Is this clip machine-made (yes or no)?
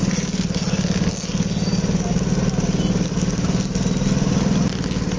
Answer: no